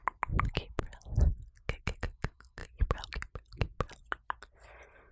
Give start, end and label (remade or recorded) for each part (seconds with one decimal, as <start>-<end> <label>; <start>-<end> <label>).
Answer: 0.0-5.1 recorded